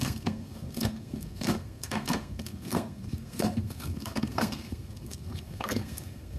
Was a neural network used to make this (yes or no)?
yes